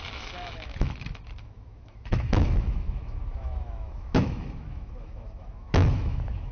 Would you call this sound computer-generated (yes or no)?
yes